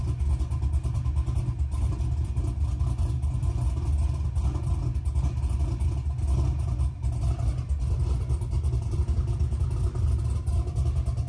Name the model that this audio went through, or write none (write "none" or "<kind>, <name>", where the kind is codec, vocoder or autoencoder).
none